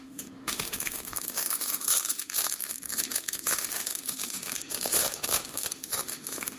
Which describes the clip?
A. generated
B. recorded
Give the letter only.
A